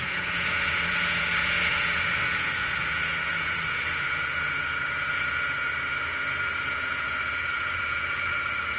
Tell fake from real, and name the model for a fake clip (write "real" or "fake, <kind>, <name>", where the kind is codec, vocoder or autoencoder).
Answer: fake, vocoder, Vocos